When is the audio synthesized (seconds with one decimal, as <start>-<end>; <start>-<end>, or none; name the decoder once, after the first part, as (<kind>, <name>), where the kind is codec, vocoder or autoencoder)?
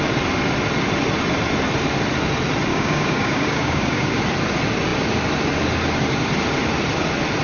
2.7-4.2 (codec, DAC)